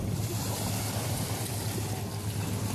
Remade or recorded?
recorded